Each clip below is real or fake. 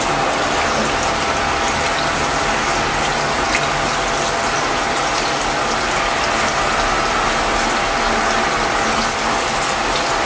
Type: real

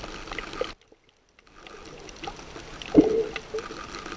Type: real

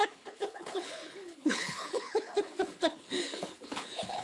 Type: fake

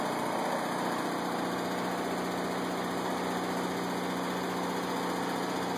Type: real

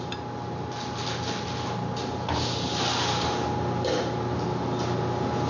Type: real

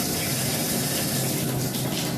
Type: real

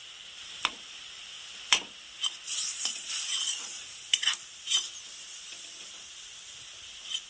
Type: real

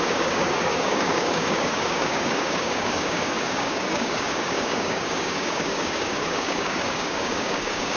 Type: fake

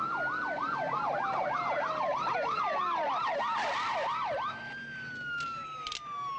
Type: real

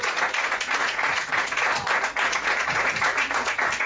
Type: fake